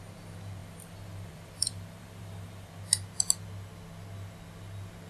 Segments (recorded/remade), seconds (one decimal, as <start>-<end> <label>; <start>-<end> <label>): 0.0-0.6 recorded; 0.6-2.7 remade; 2.7-5.1 recorded